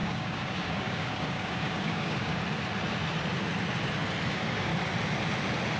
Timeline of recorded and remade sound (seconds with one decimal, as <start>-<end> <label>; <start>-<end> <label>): 0.0-2.4 remade; 2.4-4.3 recorded; 4.3-4.7 remade; 4.7-5.8 recorded